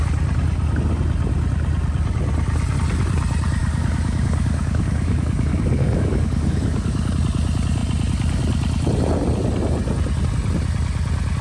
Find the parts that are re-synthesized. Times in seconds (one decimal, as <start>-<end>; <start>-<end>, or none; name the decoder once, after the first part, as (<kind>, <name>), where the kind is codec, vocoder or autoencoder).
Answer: 3.6-7.1 (codec, DAC)